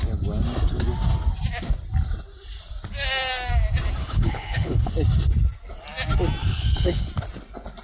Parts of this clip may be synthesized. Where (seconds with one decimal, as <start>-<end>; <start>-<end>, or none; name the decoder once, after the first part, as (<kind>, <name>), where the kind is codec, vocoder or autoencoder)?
4.0-4.9 (codec, HILCodec); 6.4-7.1